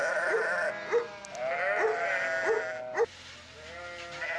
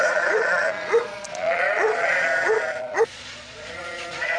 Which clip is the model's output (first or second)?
second